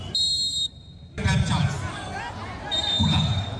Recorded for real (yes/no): yes